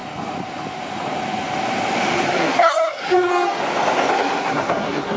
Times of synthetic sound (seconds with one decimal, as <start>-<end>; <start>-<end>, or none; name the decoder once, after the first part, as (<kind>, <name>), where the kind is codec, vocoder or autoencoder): 2.3-3.3 (codec, SNAC); 4.1-5.2